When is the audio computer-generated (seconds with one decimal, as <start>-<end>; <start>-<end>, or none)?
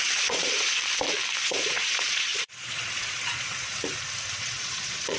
0.0-0.8; 1.4-3.8; 4.4-5.2